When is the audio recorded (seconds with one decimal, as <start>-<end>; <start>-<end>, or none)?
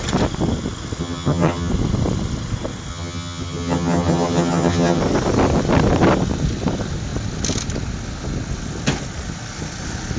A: 0.0-1.0; 1.7-2.9; 5.0-10.2